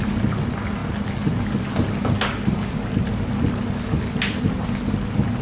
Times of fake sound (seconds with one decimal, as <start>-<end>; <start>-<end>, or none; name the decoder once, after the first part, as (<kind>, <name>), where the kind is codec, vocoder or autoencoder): none